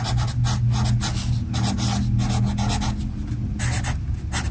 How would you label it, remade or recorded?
recorded